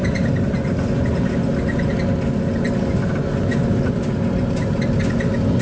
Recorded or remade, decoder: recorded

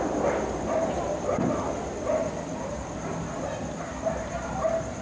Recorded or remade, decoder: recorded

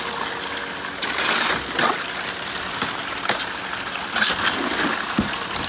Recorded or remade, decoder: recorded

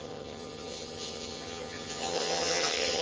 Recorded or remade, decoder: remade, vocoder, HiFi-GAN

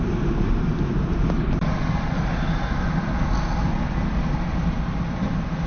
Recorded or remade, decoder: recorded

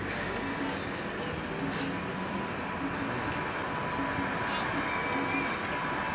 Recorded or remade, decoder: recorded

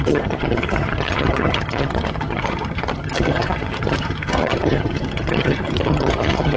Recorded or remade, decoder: remade, vocoder, HiFi-GAN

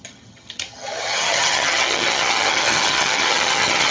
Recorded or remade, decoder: remade, vocoder, HiFi-GAN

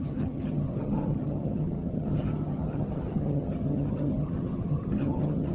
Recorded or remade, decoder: remade, vocoder, HiFi-GAN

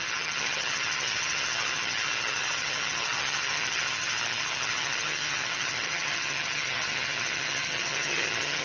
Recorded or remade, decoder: remade, vocoder, HiFi-GAN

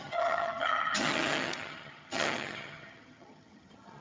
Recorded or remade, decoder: remade, vocoder, HiFi-GAN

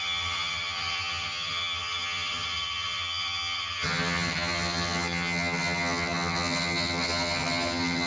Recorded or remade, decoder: remade, vocoder, HiFi-GAN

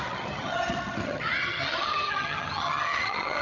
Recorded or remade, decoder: remade, vocoder, HiFi-GAN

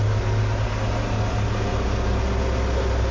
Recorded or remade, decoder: recorded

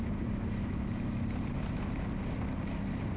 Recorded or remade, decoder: recorded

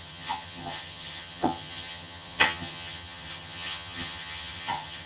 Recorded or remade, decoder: remade, vocoder, HiFi-GAN